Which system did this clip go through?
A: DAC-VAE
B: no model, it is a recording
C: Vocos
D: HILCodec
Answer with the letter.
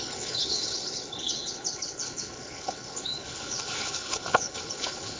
D